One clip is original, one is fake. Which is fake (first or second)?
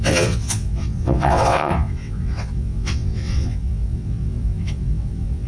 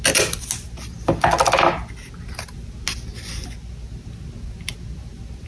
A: first